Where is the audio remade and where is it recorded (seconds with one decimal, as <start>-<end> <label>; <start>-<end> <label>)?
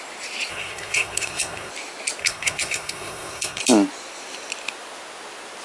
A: 0.0-0.5 recorded; 0.5-1.7 remade; 1.7-2.2 recorded; 2.2-3.6 remade; 3.6-5.6 recorded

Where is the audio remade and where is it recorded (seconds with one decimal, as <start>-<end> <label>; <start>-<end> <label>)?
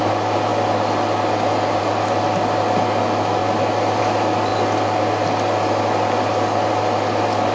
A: 0.0-7.5 recorded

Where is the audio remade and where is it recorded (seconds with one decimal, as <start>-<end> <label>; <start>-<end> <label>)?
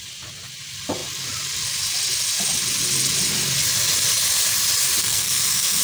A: 0.0-5.0 recorded; 5.0-5.8 remade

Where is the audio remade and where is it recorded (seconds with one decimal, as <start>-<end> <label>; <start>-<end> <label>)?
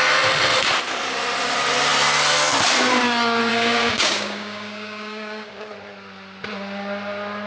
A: 0.0-3.5 recorded; 3.5-5.7 remade; 5.7-7.5 recorded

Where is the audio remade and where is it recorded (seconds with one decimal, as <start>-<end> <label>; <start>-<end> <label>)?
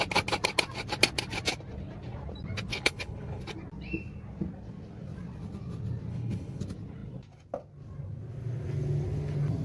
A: 0.0-2.7 recorded; 2.7-3.4 remade; 3.4-6.1 recorded; 6.1-6.6 remade; 6.6-9.6 recorded